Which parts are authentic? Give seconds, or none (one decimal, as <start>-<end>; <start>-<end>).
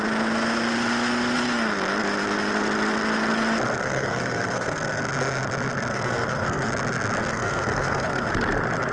0.0-3.8; 5.0-5.9; 6.7-7.2; 8.3-8.9